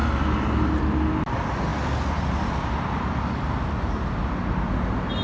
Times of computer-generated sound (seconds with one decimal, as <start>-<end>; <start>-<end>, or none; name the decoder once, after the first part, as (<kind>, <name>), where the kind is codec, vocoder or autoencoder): none